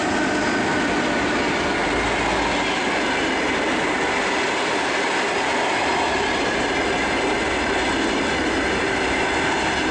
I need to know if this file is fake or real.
real